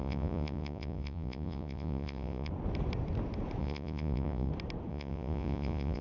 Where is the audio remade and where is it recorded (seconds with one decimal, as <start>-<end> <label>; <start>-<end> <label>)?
0.0-2.5 remade; 2.5-3.6 recorded; 3.6-4.5 remade; 4.5-4.9 recorded; 4.9-6.0 remade